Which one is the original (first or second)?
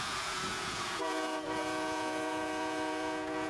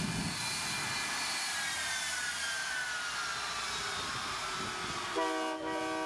second